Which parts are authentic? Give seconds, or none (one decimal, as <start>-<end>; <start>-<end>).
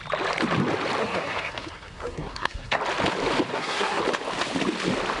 0.0-1.0; 2.8-3.5; 4.0-5.2